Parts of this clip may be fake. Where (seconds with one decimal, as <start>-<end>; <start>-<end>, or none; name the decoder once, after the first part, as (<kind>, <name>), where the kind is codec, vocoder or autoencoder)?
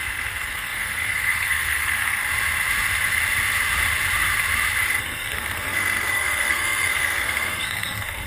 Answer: 0.0-2.2 (codec, SNAC); 5.0-8.3